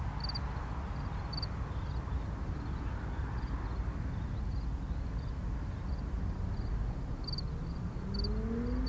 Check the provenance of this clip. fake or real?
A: real